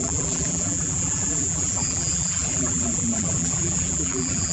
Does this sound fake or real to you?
fake